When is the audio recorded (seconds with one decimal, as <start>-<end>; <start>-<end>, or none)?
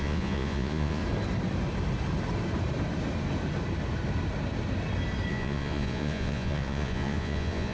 1.0-5.3